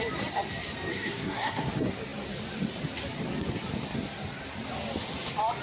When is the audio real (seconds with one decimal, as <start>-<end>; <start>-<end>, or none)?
0.0-0.9; 1.7-5.6